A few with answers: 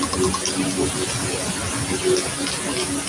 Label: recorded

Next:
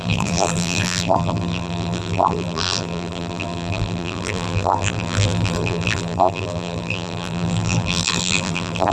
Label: remade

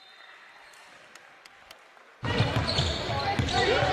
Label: remade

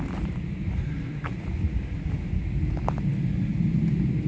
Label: recorded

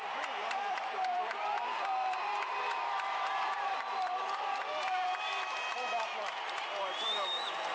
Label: remade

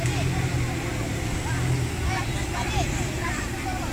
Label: recorded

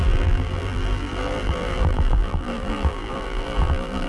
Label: remade